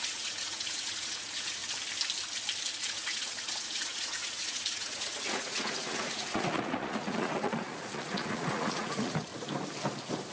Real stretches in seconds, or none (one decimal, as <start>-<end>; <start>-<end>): 1.6-2.8; 9.3-10.3